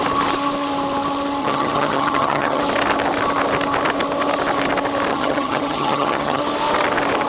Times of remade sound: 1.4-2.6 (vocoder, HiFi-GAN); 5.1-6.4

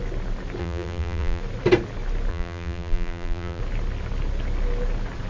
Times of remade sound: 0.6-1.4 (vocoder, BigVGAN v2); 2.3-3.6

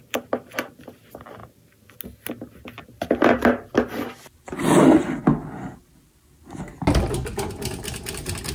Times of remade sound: none

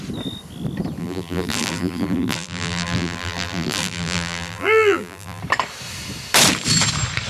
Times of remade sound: 1.0-5.4 (vocoder, BigVGAN v2)